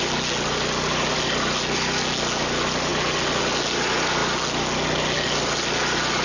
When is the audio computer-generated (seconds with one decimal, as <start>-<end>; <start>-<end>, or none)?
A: none